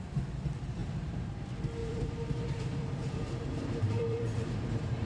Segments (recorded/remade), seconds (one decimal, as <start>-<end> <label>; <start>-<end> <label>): 0.0-0.8 recorded; 0.8-1.4 remade; 1.4-1.8 recorded; 1.8-5.1 remade